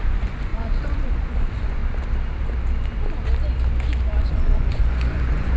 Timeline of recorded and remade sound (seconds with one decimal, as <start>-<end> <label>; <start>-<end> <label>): 0.0-1.8 remade; 1.8-4.2 recorded; 4.2-5.6 remade